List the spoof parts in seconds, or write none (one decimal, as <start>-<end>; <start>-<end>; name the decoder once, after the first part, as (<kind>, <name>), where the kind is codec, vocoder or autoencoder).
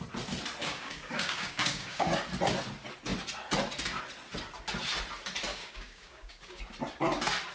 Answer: 0.6-2.1 (codec, DAC); 5.5-6.6